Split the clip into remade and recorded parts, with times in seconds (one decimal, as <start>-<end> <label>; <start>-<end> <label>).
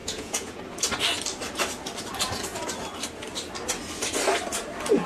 0.0-0.6 remade; 0.6-5.1 recorded